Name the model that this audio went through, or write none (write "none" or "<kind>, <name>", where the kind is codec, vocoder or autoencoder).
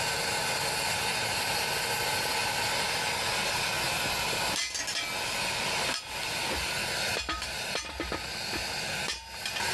none